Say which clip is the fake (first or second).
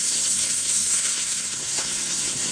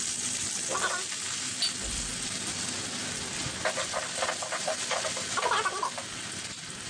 first